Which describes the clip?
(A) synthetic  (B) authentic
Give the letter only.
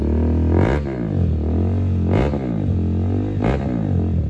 B